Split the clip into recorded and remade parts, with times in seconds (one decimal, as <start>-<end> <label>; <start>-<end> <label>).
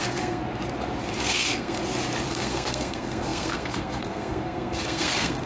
0.0-0.4 remade; 0.4-1.2 recorded; 1.2-1.8 remade; 1.8-2.3 recorded; 2.3-5.5 remade